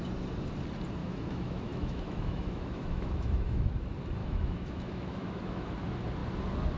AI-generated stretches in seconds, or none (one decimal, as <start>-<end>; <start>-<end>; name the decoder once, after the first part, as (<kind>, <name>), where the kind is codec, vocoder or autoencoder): 1.0-3.7 (autoencoder, DAC-VAE); 4.2-5.7